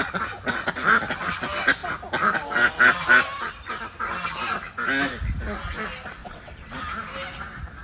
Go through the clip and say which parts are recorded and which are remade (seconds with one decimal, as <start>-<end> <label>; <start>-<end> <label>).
0.0-6.2 recorded; 6.2-6.8 remade; 6.8-7.8 recorded